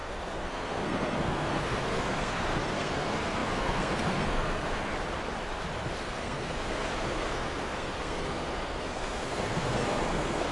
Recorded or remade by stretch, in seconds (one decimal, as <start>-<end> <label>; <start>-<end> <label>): 0.0-4.9 remade; 4.9-6.0 recorded; 6.0-10.5 remade